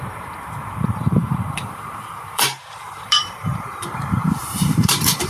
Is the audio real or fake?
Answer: fake